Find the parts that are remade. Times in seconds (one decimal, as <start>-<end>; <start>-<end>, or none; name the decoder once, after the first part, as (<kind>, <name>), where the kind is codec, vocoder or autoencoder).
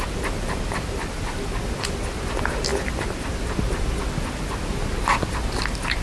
none